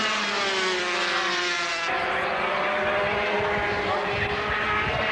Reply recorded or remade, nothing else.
recorded